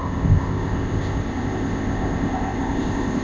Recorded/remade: remade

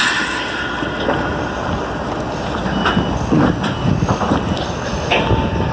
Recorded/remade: recorded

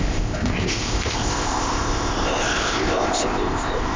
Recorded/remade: remade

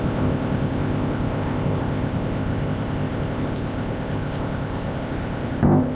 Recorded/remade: remade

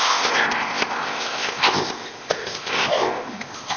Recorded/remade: remade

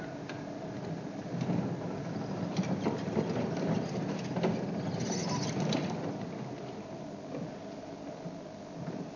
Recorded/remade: recorded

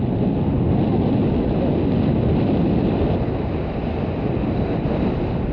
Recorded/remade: recorded